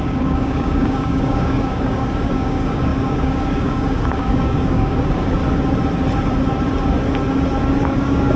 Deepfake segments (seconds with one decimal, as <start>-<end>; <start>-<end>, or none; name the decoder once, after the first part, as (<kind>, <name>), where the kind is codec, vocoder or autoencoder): 0.0-5.4 (codec, DAC); 7.8-8.4